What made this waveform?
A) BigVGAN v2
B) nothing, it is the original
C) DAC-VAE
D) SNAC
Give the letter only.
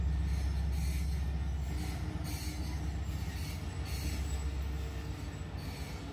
B